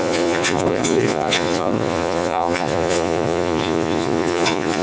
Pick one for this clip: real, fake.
fake